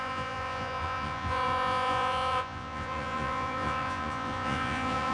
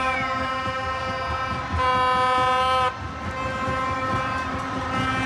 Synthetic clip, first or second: first